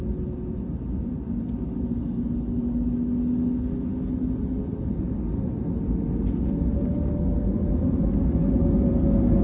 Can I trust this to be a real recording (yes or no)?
yes